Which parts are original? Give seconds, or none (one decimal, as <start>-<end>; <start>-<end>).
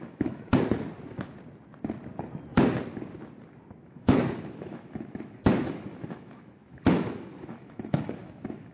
0.5-3.9